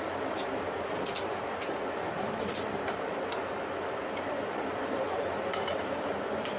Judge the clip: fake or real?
fake